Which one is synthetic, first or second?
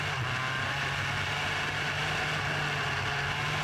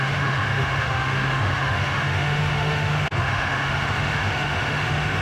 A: second